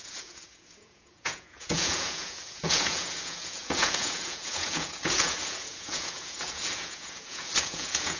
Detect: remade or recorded remade